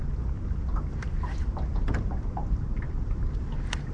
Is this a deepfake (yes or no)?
no